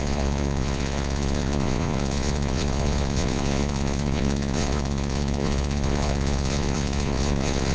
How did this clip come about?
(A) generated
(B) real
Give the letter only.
A